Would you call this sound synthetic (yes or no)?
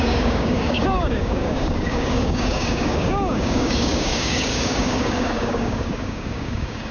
yes